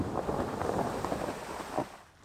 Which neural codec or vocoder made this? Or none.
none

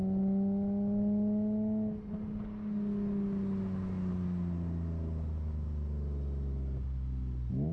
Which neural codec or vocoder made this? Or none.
none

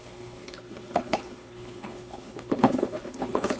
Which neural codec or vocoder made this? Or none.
codec, HILCodec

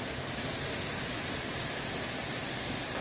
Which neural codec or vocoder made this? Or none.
none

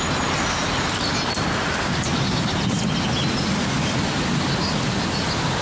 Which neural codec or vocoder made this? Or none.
none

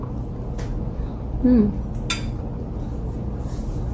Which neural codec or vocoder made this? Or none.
none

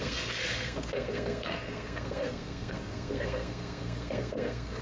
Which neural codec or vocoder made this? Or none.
codec, SNAC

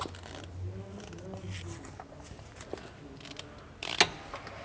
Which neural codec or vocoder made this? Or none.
none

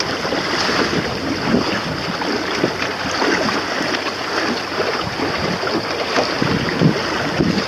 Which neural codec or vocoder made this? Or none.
none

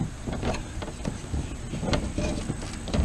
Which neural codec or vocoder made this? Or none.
none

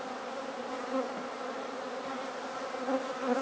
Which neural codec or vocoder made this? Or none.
none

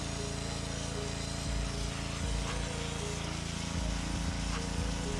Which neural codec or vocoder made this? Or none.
none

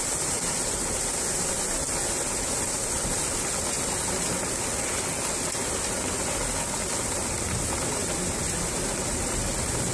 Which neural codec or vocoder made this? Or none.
none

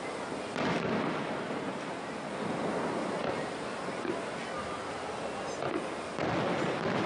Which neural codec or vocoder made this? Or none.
none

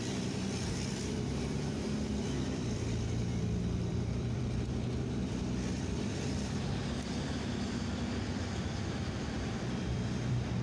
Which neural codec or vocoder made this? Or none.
vocoder, BigVGAN v2